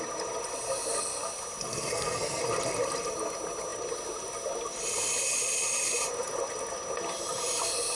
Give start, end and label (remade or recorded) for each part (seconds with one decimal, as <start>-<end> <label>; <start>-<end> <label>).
0.0-1.7 recorded; 1.7-2.4 remade; 2.4-7.9 recorded